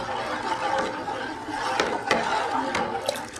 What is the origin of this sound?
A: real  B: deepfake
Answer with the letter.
A